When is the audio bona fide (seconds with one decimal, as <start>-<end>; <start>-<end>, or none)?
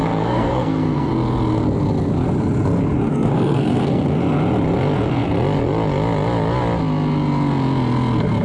1.1-3.1; 4.2-8.4